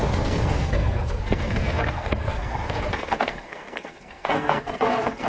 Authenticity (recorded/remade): remade